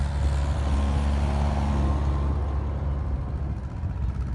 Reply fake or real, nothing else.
real